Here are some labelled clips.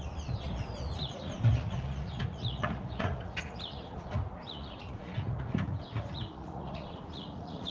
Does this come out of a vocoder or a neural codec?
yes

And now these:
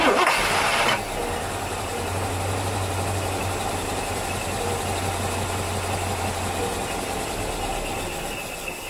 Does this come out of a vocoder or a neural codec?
no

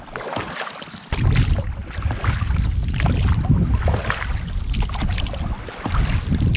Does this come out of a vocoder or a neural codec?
no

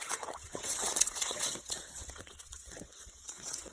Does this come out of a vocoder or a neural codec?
yes